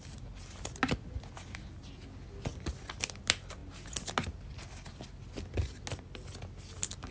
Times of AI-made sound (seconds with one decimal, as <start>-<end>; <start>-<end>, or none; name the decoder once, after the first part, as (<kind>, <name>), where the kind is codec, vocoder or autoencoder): none